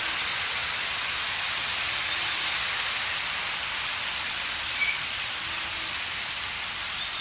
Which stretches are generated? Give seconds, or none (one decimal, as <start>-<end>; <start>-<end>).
none